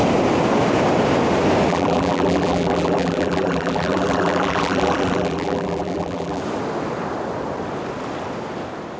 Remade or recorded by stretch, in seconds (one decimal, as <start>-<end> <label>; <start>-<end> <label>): 0.0-1.7 recorded; 1.7-6.4 remade; 6.4-9.0 recorded